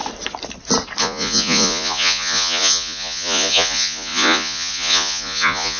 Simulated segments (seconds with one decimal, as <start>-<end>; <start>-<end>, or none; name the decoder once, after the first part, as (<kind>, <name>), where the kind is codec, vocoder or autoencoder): 1.0-5.8 (vocoder, Vocos)